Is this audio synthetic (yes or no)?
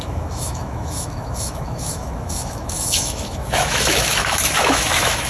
yes